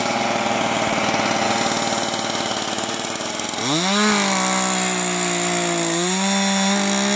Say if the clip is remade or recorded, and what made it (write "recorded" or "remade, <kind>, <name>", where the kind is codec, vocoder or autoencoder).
recorded